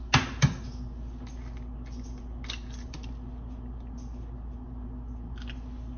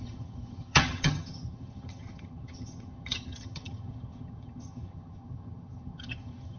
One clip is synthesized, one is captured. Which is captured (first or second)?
first